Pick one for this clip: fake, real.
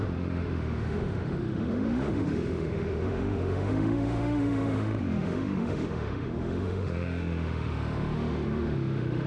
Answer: fake